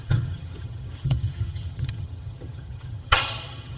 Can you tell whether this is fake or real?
fake